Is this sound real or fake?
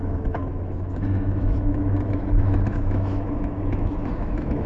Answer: fake